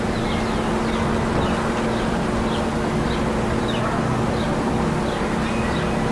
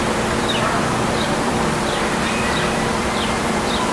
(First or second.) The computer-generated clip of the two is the second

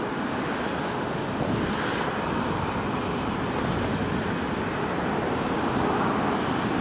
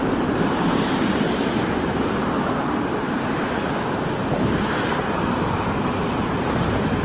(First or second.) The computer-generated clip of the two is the second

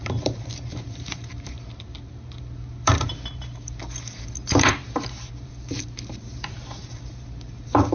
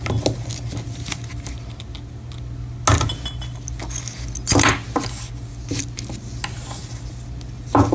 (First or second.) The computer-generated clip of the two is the first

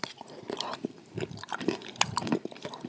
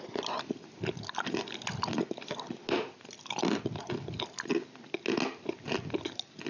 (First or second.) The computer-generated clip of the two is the first